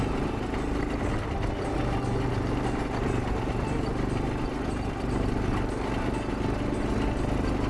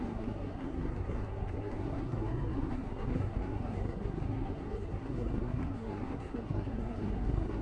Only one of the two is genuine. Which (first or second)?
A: first